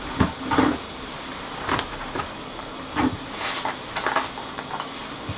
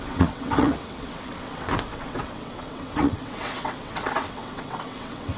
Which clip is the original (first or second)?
first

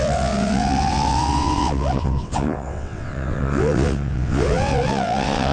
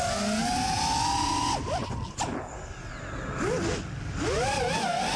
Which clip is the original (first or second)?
second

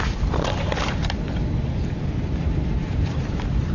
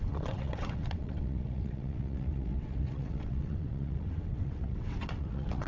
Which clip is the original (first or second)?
first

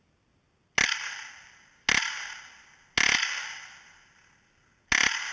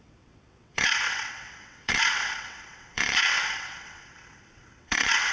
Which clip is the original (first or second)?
first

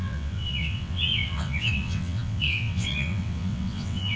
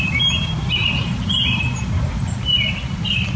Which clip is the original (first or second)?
second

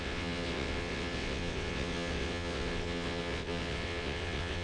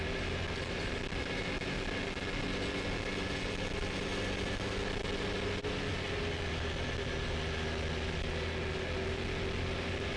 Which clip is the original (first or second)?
second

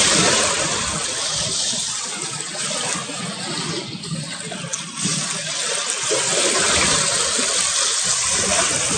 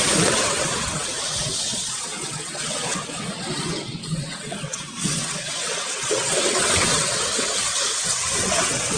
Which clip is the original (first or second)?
first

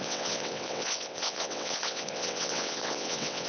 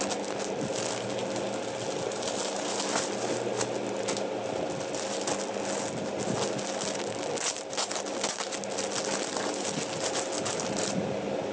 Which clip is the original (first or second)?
second